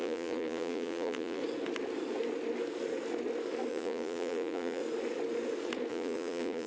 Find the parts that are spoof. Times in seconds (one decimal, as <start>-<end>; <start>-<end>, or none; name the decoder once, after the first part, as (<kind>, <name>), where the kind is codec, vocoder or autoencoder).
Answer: 0.0-1.4 (vocoder, Vocos); 3.7-4.8; 5.9-6.7